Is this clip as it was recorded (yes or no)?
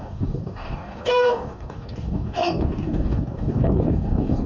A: no